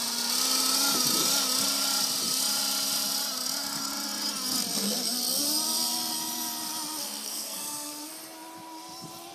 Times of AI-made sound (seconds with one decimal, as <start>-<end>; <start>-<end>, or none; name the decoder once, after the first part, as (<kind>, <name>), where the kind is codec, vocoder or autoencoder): 7.0-8.1 (codec, SNAC)